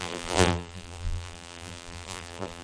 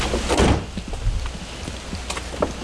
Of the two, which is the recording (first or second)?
second